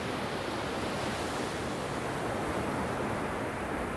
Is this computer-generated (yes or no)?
no